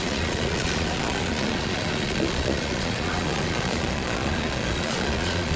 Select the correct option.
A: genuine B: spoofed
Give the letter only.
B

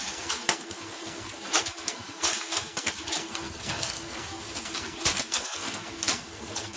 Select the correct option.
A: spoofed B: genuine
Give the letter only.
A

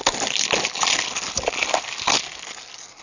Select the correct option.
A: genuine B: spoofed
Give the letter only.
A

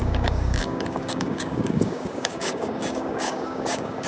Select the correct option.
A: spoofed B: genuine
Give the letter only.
A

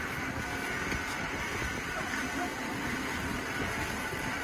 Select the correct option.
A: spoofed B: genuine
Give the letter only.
B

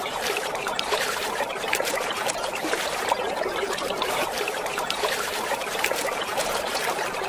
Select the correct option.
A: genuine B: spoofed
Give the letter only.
B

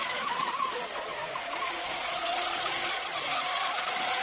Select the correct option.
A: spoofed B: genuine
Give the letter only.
A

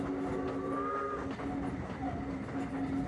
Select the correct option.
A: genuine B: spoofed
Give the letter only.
A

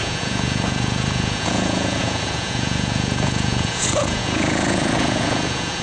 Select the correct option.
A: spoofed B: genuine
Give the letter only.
A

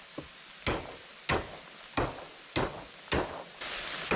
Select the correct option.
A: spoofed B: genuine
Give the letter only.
B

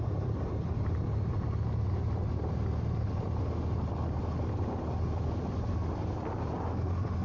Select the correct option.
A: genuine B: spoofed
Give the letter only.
A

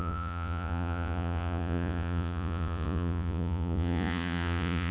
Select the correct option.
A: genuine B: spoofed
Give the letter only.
B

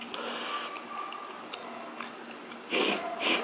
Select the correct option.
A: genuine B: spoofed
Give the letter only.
A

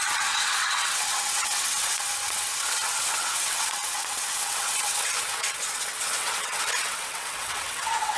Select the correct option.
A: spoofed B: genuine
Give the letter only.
A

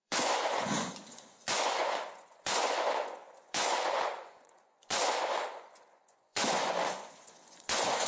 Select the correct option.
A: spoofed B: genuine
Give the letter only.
A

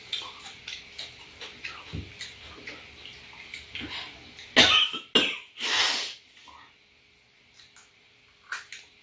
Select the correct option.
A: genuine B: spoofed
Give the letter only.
A